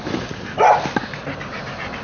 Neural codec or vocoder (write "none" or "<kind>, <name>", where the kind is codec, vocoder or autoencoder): none